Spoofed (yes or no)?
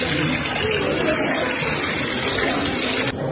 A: no